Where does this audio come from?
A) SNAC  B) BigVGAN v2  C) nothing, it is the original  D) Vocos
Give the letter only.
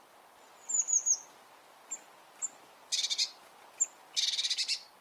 C